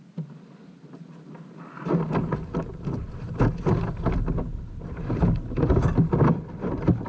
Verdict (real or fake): real